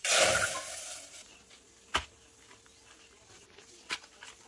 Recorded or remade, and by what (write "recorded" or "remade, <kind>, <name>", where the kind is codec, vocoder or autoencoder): remade, vocoder, BigVGAN v2